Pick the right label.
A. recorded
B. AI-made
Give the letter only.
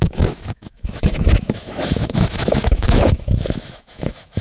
B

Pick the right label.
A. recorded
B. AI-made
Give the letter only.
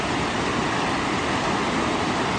A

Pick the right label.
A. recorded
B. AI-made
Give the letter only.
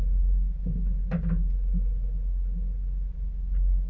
A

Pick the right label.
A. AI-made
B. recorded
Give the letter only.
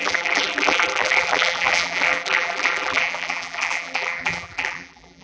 A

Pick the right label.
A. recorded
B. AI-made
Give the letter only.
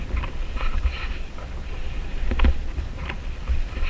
A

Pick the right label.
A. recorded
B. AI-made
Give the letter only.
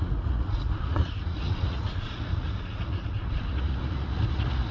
B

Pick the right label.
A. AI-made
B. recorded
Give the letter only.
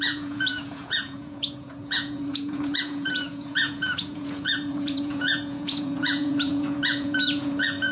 A